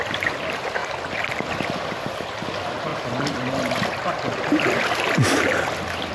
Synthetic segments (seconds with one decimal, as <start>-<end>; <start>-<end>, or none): none